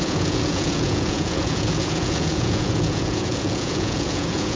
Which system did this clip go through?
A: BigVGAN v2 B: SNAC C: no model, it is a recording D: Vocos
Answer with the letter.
D